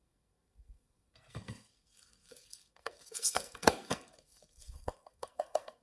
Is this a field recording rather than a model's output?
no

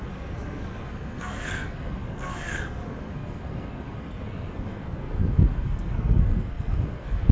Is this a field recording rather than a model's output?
no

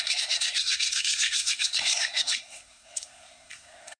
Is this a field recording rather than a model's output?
no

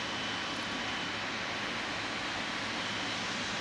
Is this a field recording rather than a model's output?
yes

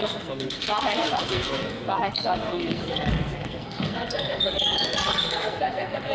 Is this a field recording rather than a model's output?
no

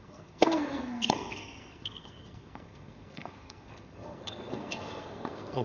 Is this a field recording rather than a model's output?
no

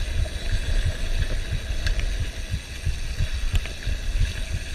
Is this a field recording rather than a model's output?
yes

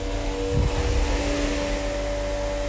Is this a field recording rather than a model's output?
yes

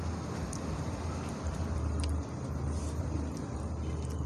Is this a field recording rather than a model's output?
yes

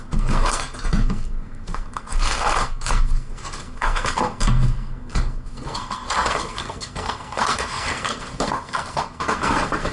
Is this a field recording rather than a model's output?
no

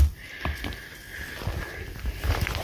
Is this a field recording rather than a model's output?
yes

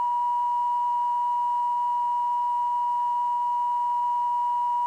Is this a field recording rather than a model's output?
yes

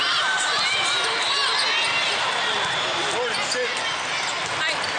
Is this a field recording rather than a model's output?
yes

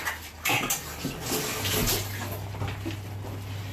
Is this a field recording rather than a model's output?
yes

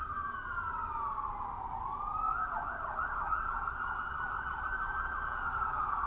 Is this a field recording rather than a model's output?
yes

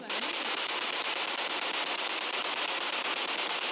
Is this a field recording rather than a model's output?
yes